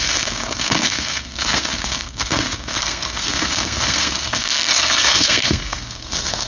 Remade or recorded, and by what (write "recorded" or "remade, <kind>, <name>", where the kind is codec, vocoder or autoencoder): remade, codec, SNAC